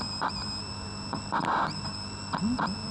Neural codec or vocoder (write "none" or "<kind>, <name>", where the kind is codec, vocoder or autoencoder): none